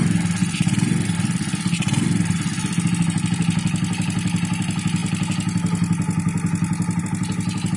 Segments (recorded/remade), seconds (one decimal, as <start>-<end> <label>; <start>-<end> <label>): 0.0-7.8 recorded